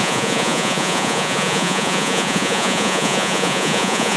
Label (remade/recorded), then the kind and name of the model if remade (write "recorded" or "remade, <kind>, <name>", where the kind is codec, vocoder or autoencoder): remade, vocoder, Vocos